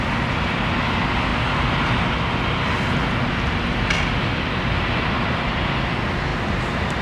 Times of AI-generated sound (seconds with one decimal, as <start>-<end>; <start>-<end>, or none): none